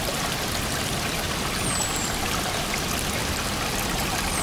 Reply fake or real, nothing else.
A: real